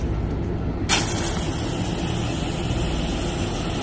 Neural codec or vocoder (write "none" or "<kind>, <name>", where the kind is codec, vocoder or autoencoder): none